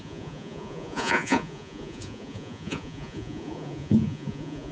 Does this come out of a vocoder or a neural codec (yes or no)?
yes